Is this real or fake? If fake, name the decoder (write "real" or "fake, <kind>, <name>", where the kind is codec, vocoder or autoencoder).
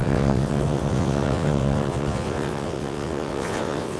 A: fake, vocoder, WaveNeXt